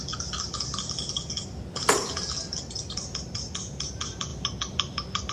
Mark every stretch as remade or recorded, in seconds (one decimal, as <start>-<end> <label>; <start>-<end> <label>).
0.0-5.3 recorded